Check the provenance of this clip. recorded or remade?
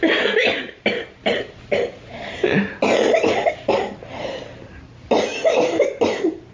recorded